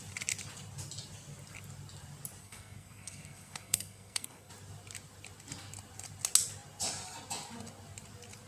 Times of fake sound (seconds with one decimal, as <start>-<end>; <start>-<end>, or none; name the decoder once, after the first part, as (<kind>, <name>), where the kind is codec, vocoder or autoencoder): 2.4-4.5 (codec, SNAC)